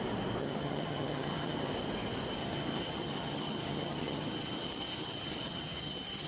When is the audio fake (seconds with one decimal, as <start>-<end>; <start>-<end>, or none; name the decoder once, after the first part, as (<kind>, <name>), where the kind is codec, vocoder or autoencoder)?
0.4-1.7 (vocoder, HiFi-GAN); 2.4-6.3